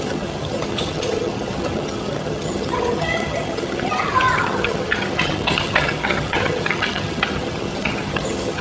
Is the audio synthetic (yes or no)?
yes